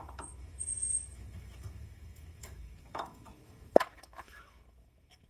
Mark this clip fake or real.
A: fake